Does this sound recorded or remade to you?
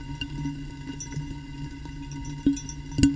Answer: recorded